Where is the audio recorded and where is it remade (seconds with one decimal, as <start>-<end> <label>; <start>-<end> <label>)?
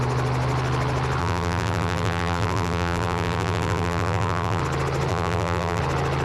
0.0-1.2 recorded; 1.2-4.6 remade; 4.6-5.1 recorded; 5.1-5.8 remade; 5.8-6.2 recorded